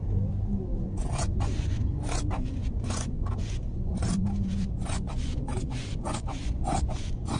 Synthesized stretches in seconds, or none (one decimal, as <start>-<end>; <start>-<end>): 0.8-7.4